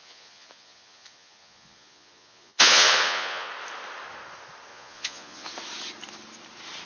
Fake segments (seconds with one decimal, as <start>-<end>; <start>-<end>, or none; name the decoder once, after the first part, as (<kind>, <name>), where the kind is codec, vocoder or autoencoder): 0.0-3.5 (vocoder, Vocos); 4.7-5.5